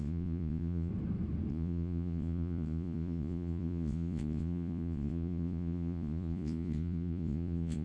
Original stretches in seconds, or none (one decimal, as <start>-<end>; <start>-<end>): 0.9-1.5